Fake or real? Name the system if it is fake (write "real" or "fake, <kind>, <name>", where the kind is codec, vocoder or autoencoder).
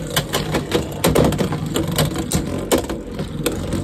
real